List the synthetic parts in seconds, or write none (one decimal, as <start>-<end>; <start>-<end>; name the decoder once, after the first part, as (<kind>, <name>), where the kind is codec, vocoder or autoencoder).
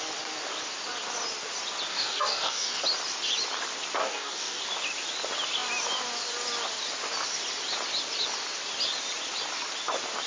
1.9-2.8 (codec, DAC); 4.0-4.6